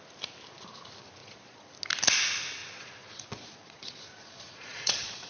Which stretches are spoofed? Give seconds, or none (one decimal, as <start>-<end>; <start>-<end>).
1.2-1.7; 2.6-5.3

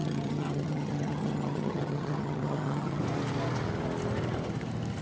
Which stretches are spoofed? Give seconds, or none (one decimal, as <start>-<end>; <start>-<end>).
0.0-3.0

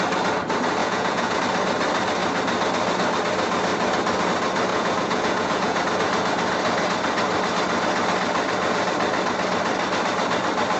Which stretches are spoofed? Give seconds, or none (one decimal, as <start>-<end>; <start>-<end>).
0.8-1.4; 4.7-5.8

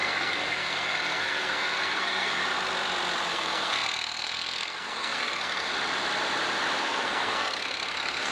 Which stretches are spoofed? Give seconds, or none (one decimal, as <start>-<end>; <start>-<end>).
0.0-2.4; 3.3-5.7; 6.8-8.3

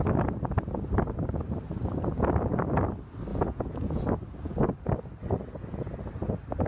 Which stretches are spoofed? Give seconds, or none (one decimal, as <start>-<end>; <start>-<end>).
3.3-4.0